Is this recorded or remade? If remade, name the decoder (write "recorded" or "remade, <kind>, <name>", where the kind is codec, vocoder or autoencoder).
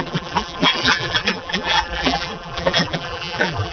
remade, vocoder, BigVGAN v2